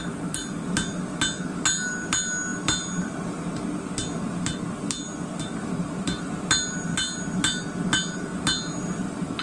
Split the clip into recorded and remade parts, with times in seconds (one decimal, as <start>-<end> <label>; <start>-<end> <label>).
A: 0.0-9.4 recorded